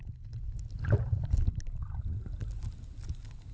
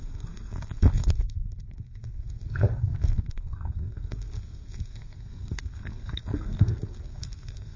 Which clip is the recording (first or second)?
first